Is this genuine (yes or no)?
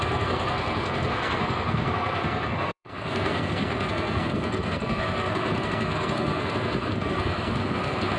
no